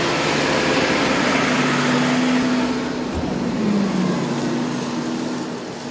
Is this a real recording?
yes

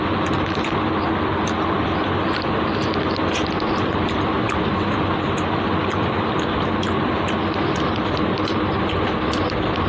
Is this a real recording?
yes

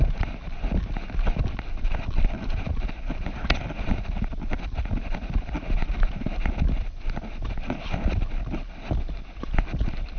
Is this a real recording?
yes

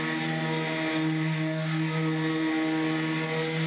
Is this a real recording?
yes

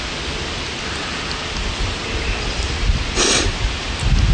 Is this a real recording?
yes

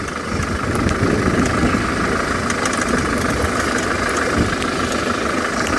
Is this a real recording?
yes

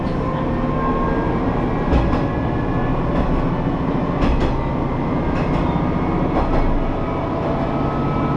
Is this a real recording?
yes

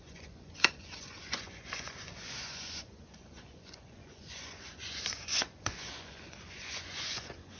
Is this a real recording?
no